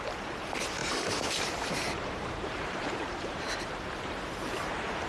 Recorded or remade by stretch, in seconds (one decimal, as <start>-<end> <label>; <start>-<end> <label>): 0.0-0.8 recorded; 0.8-3.9 remade; 3.9-5.1 recorded